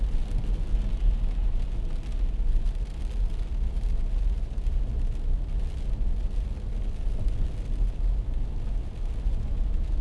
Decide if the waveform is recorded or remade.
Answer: recorded